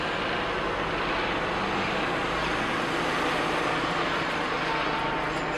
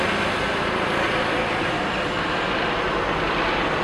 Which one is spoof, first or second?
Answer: second